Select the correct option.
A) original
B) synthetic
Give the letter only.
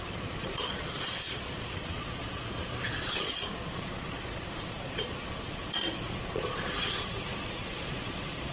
B